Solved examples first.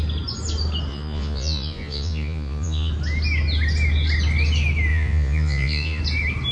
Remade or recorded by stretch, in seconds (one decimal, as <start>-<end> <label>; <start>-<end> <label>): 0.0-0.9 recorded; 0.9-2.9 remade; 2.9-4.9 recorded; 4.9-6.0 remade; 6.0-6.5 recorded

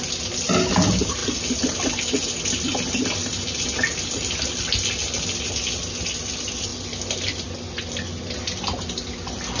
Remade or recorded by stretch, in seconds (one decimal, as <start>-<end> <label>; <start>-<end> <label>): 0.0-9.6 recorded

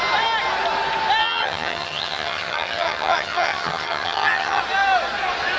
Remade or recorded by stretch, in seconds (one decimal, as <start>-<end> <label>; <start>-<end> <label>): 0.0-1.2 recorded; 1.2-4.6 remade; 4.6-5.6 recorded

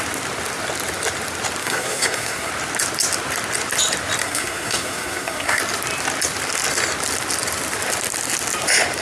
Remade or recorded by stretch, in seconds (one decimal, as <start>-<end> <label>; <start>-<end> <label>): 0.0-1.6 recorded; 1.6-2.5 remade; 2.5-4.2 recorded; 4.2-5.6 remade; 5.6-9.0 recorded